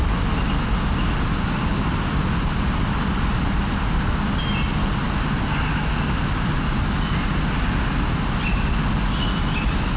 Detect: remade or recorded recorded